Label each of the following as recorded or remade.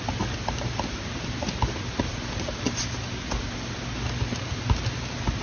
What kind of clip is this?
recorded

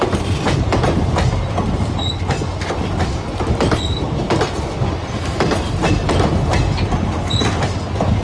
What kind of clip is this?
recorded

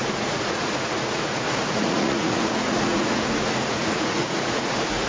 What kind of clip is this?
remade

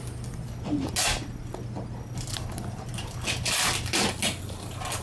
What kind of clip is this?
recorded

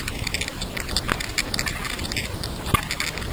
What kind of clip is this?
recorded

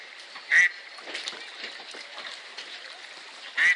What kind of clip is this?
recorded